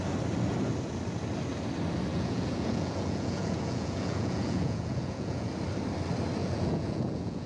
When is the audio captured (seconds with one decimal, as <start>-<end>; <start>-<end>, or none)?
0.0-2.1; 5.5-6.4